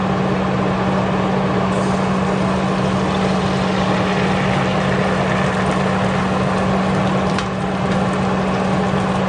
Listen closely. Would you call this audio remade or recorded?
recorded